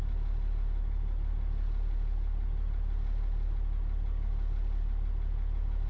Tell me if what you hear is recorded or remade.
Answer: recorded